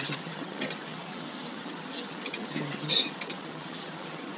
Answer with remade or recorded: remade